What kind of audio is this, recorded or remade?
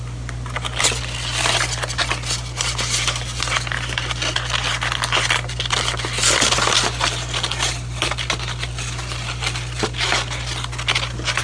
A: recorded